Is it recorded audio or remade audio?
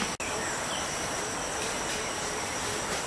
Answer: recorded